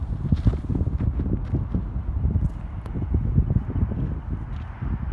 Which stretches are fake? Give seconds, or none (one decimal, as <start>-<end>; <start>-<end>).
none